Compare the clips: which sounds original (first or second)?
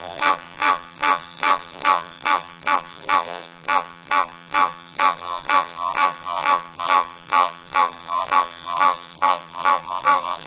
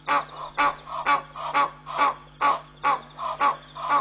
second